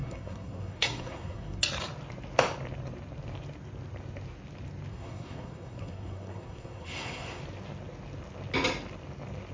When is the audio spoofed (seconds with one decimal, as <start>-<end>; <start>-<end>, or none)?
0.0-1.6; 4.9-7.4